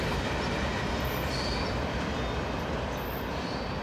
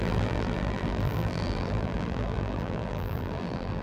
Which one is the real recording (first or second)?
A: first